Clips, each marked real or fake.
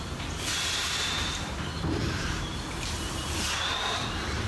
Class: fake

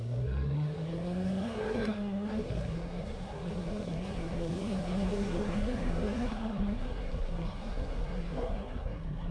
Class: fake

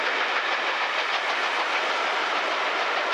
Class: real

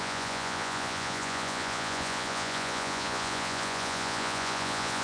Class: fake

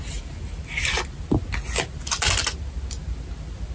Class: real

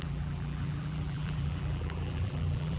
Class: fake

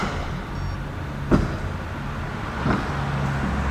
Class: real